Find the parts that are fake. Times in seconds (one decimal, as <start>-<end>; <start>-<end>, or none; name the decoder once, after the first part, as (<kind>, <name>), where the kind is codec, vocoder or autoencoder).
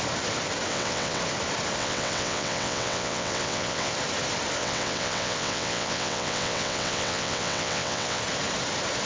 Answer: 0.7-1.2 (vocoder, WaveNeXt); 1.8-3.9; 4.6-8.2